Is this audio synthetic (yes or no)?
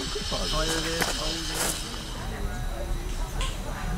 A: no